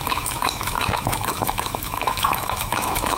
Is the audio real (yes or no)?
no